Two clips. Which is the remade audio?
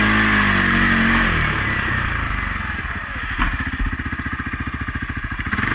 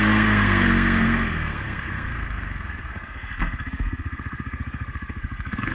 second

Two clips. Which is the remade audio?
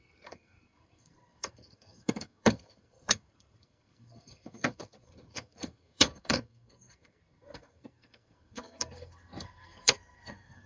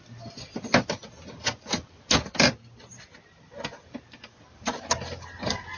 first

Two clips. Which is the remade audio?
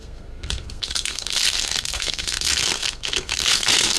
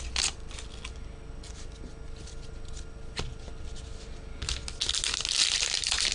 first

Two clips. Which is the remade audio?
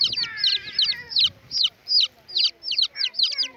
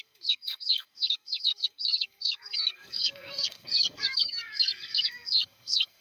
second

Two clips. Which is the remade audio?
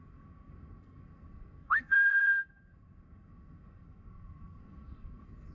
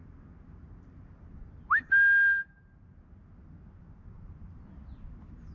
first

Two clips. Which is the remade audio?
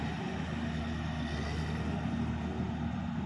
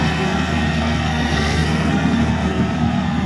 second